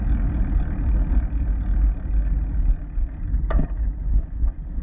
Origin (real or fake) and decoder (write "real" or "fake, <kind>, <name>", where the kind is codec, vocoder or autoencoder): real